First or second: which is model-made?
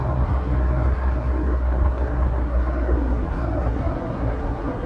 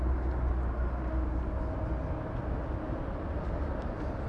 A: first